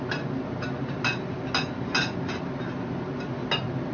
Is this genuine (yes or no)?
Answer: yes